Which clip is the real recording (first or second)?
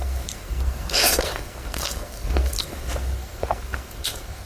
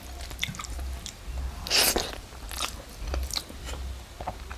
second